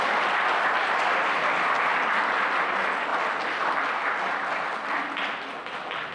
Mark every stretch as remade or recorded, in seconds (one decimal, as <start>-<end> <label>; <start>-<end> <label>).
0.0-6.1 recorded